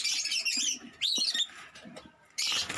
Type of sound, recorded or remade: recorded